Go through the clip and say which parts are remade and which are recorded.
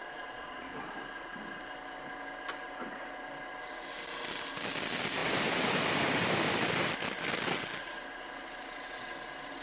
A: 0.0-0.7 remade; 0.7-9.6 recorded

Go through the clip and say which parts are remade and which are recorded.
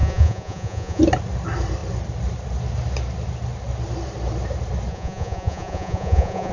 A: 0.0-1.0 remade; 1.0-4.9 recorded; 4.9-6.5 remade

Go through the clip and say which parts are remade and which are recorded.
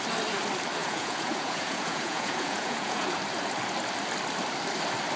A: 0.0-0.8 recorded; 0.8-3.2 remade; 3.2-5.2 recorded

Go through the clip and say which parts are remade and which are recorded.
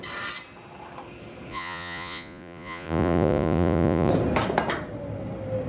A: 0.0-1.5 recorded; 1.5-4.1 remade; 4.1-5.7 recorded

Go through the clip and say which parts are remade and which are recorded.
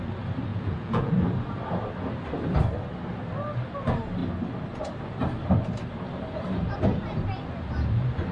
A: 0.0-0.5 recorded; 0.5-1.1 remade; 1.1-8.3 recorded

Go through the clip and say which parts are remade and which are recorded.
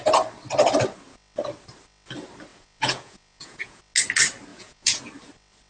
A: 0.0-2.5 recorded; 2.5-3.8 remade; 3.8-4.5 recorded; 4.5-5.0 remade; 5.0-5.7 recorded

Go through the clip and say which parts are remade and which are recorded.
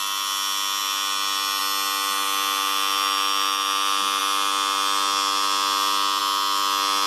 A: 0.0-7.1 recorded